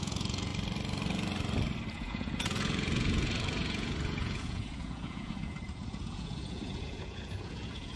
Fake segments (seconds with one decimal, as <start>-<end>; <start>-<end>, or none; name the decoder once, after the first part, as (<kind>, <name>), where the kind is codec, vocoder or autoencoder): 0.0-0.5 (vocoder, Vocos); 1.9-8.0